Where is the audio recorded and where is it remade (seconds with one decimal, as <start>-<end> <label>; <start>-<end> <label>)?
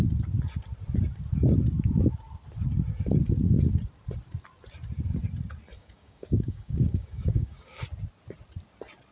0.0-5.8 recorded; 5.8-7.8 remade; 7.8-9.1 recorded